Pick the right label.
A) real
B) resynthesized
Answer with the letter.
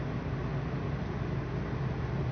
A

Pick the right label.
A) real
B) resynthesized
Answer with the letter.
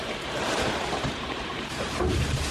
B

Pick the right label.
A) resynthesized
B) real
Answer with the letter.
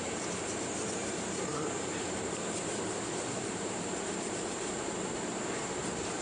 A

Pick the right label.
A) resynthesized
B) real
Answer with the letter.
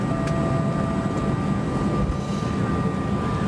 B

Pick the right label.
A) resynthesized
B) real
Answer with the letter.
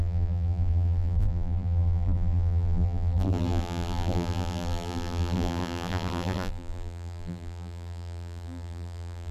A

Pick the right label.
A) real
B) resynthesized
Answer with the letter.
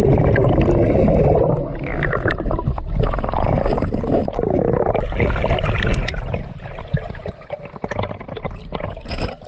A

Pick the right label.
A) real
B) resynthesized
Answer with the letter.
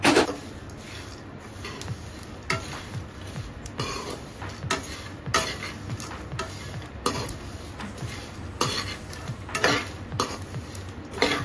A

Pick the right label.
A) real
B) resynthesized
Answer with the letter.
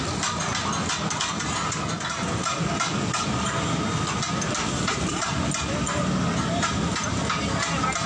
A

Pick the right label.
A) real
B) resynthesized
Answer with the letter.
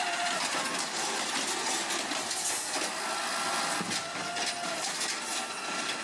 A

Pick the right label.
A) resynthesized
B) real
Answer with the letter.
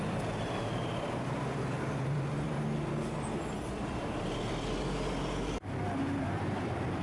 A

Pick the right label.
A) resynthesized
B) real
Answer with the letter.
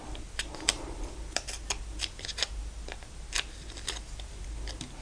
A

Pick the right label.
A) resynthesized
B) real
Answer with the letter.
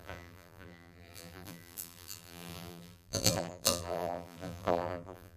A